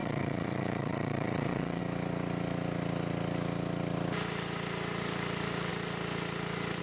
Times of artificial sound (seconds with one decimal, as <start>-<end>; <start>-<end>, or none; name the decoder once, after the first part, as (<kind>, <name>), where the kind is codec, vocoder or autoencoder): 0.0-1.8 (vocoder, Vocos)

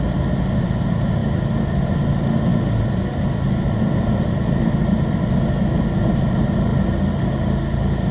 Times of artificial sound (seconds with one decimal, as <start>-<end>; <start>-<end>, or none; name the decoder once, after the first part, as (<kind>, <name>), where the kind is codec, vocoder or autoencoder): none